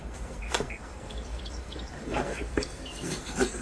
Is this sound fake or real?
fake